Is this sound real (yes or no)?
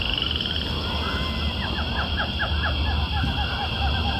yes